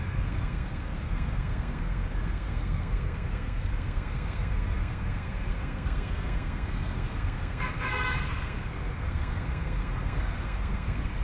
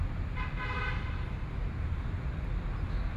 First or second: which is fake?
first